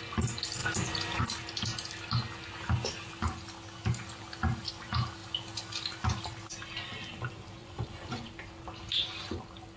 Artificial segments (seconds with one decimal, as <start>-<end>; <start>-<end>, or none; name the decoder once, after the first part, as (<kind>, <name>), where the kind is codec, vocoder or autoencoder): 7.6-8.3 (vocoder, Vocos)